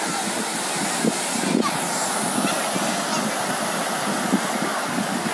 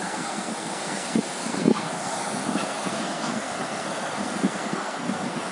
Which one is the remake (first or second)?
second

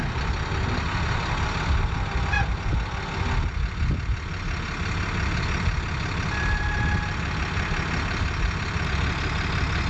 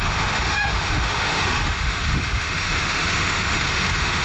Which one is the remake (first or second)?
second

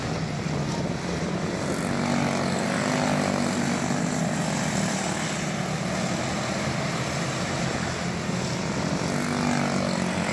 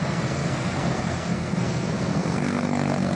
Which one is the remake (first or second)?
second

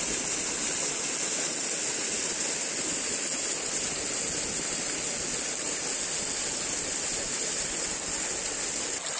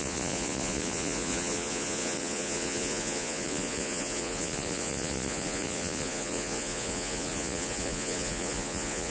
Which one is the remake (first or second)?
second